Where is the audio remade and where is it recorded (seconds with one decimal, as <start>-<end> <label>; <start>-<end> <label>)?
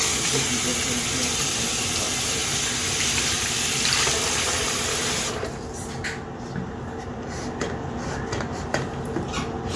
0.0-9.8 recorded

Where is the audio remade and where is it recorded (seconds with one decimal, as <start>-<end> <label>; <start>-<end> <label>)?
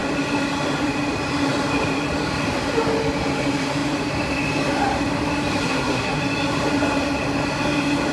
0.0-5.6 recorded; 5.6-6.2 remade; 6.2-8.1 recorded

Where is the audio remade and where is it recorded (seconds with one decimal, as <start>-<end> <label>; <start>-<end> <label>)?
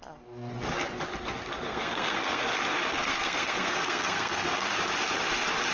0.0-1.7 recorded; 1.7-2.4 remade; 2.4-2.9 recorded; 2.9-4.5 remade; 4.5-5.7 recorded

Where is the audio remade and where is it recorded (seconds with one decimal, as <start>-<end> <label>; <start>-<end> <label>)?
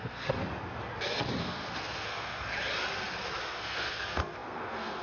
0.0-0.4 remade; 0.4-1.4 recorded; 1.4-2.5 remade; 2.5-3.4 recorded; 3.4-5.0 remade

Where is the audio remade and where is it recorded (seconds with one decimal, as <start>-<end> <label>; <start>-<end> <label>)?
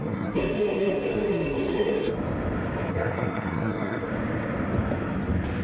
0.0-2.1 remade; 2.1-2.9 recorded; 2.9-4.1 remade; 4.1-5.6 recorded